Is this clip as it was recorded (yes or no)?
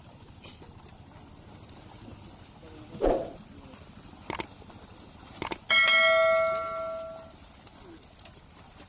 yes